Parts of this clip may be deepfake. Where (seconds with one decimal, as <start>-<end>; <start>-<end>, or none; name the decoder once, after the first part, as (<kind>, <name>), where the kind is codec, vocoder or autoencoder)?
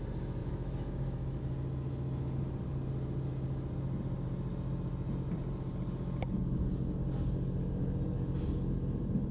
0.4-1.4 (autoencoder, DAC-VAE)